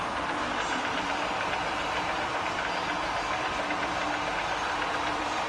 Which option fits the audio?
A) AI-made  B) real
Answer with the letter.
B